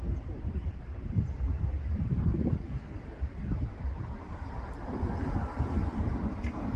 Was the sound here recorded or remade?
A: recorded